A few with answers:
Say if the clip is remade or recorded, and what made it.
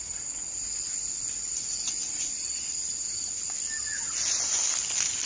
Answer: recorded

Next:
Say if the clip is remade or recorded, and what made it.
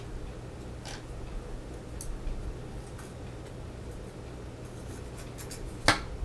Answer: recorded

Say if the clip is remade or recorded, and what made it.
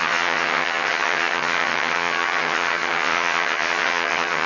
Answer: remade, vocoder, HiFi-GAN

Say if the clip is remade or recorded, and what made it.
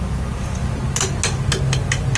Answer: recorded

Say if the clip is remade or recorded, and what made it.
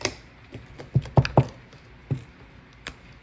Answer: recorded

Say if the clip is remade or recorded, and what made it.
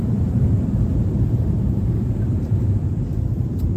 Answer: remade, vocoder, BigVGAN v2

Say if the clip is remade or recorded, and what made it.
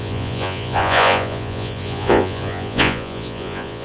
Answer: remade, vocoder, Vocos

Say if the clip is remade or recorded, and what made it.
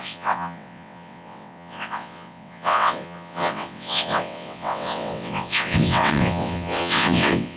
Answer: remade, vocoder, WaveNeXt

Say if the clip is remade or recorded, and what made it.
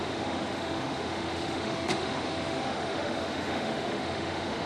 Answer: remade, autoencoder, DAC-VAE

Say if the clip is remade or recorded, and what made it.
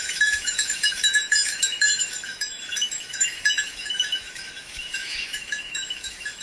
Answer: remade, autoencoder, DAC-VAE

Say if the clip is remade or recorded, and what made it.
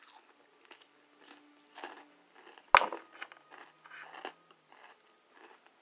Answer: recorded